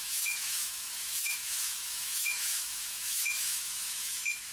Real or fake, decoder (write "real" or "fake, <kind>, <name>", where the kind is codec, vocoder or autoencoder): fake, autoencoder, DAC-VAE